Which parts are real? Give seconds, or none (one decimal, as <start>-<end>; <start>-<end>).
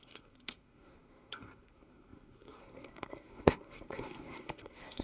none